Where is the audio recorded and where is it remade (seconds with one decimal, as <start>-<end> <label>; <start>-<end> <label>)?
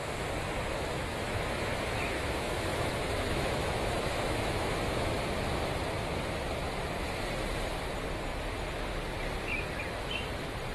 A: 0.0-1.1 recorded; 1.1-5.1 remade; 5.1-10.7 recorded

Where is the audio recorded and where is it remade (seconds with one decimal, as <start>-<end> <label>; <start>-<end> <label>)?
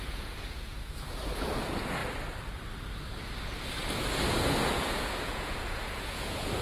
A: 0.0-2.0 remade; 2.0-4.2 recorded; 4.2-6.6 remade